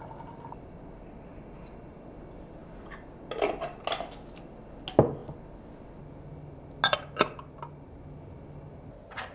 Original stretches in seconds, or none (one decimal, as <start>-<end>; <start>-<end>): 0.0-1.3; 2.1-9.3